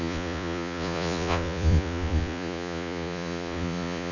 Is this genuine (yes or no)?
no